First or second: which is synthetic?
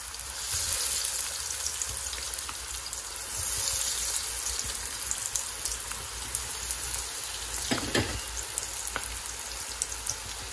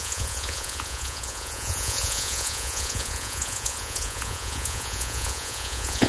second